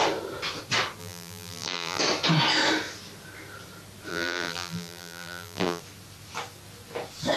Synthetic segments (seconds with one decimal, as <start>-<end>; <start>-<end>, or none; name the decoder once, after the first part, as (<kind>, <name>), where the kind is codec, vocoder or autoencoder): 1.0-2.0 (vocoder, BigVGAN v2); 4.1-5.8